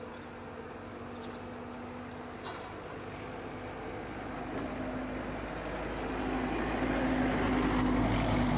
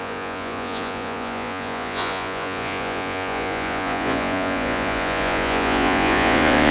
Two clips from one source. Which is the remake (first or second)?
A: second